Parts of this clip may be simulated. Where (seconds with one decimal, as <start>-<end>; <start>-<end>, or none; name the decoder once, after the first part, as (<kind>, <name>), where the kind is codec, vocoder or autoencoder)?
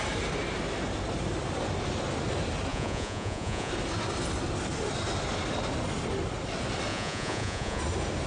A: 2.7-3.7 (vocoder, Vocos); 6.9-7.8